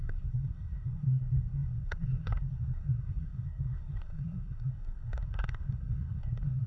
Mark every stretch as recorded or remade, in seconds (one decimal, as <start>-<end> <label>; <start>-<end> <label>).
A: 0.0-6.7 remade